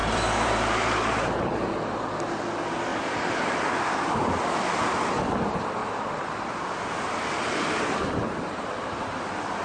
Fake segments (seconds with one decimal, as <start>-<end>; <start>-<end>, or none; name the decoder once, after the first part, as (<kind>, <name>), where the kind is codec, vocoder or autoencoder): 0.0-1.7 (vocoder, BigVGAN v2); 2.9-3.7; 5.8-9.2